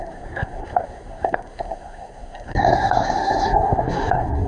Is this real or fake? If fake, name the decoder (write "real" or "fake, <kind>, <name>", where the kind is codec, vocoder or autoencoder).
fake, codec, SNAC